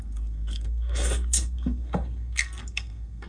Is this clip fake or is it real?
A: fake